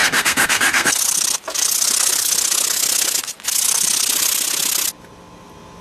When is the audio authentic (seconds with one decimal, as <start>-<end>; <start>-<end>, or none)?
1.0-5.8